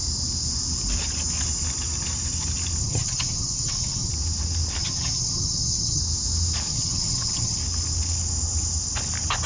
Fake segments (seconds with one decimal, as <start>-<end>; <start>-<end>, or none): 2.8-4.1; 4.8-6.0; 6.7-7.6